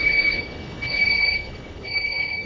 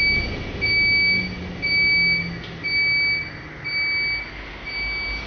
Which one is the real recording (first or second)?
second